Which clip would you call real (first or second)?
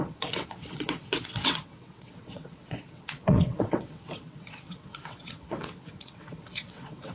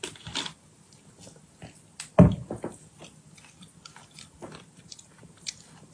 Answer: second